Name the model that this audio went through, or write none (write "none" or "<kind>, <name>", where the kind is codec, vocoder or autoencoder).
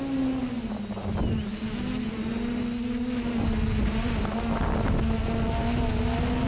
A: none